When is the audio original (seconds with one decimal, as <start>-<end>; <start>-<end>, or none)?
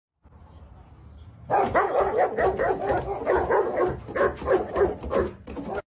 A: 0.0-5.9